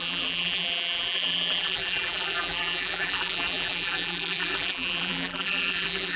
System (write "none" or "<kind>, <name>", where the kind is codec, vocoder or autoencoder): vocoder, BigVGAN v2